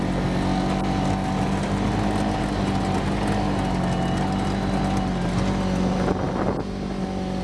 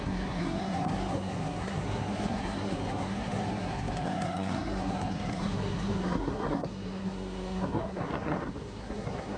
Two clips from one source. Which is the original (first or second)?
first